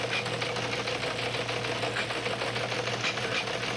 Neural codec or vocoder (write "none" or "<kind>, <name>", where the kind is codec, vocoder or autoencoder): none